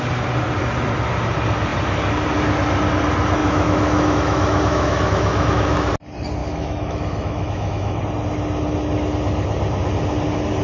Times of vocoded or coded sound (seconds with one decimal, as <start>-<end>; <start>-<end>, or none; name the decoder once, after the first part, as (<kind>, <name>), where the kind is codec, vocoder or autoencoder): 3.4-5.9 (autoencoder, DAC-VAE); 6.4-8.0